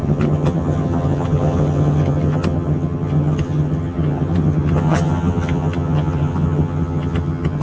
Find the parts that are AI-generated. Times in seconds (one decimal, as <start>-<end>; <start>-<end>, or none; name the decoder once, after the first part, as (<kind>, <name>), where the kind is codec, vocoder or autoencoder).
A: 0.0-7.6 (vocoder, HiFi-GAN)